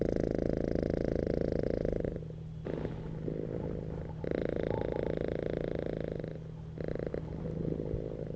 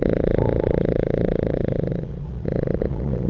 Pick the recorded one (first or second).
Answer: first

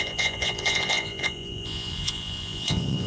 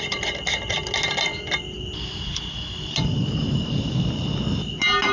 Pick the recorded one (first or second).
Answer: second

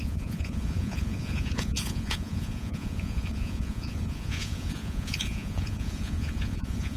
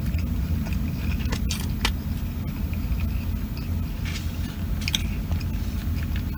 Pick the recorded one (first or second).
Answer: second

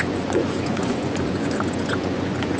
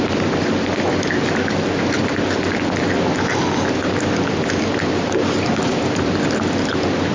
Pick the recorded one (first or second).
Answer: second